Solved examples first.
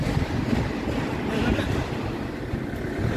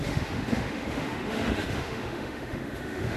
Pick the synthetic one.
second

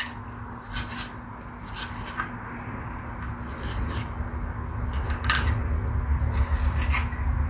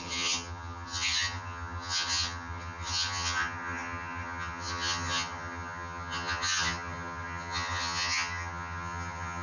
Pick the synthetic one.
second